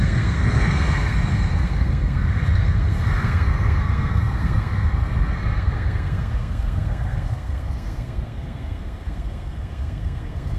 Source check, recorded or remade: remade